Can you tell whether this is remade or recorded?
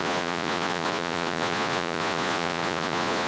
remade